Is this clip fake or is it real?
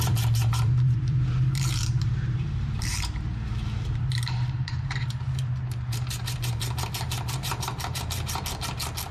fake